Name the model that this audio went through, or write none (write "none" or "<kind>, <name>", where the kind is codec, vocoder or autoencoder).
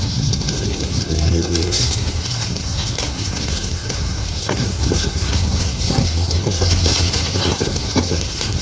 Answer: codec, SNAC